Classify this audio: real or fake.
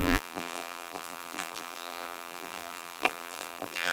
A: fake